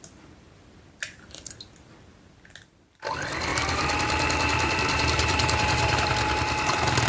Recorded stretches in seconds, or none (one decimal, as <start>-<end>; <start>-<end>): 0.0-3.5; 6.1-7.1